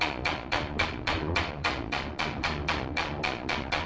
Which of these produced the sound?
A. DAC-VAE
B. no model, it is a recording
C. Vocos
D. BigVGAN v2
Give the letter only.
C